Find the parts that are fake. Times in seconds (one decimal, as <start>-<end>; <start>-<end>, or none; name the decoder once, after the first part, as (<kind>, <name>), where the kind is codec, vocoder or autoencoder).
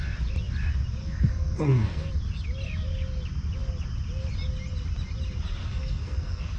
1.0-2.1 (codec, SNAC); 5.6-6.6